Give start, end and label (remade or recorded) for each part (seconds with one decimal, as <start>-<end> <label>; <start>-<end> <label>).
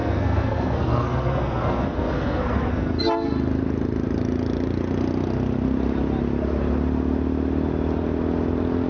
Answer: 0.0-3.0 remade; 3.0-8.9 recorded